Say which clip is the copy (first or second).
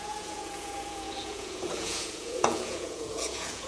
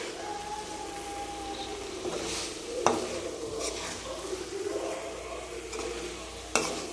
first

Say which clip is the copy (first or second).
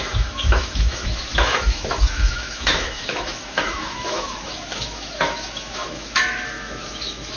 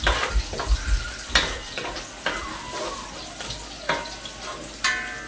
first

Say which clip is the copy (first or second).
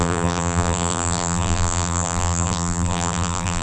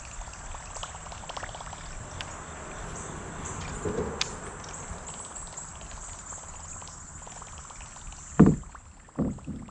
first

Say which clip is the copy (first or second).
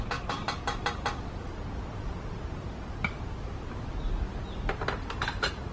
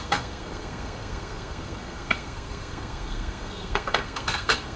second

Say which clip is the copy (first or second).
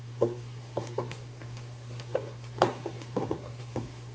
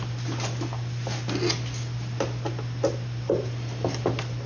first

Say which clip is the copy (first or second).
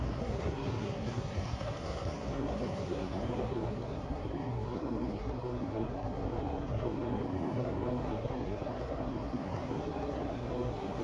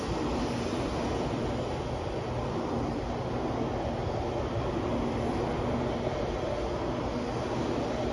first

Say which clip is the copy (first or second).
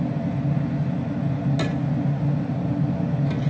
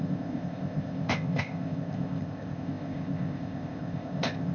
second